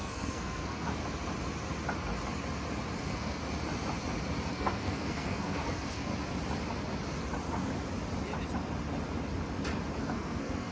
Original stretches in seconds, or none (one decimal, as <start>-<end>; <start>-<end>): 1.0-3.0; 3.4-4.5; 6.1-10.0